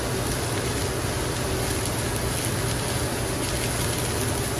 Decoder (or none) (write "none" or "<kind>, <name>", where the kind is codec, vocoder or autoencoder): none